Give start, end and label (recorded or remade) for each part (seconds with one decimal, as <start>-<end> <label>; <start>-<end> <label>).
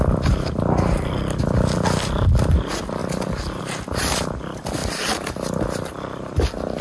0.0-3.0 recorded; 3.0-3.6 remade; 3.6-4.8 recorded; 4.8-5.3 remade; 5.3-6.8 recorded